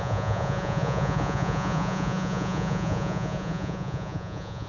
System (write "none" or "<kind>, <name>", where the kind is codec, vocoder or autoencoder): vocoder, Vocos